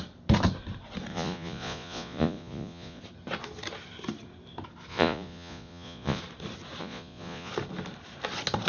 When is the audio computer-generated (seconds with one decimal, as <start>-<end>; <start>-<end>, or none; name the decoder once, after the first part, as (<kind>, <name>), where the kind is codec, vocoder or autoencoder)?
1.1-3.0 (vocoder, Vocos); 4.9-6.2; 6.8-7.5